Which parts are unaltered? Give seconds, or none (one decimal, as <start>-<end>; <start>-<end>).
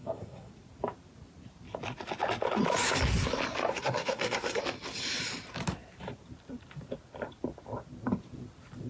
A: 0.5-3.7; 4.6-8.9